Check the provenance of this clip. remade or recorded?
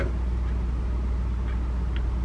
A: recorded